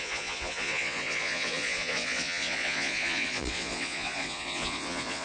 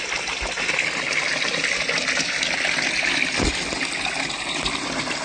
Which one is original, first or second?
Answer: second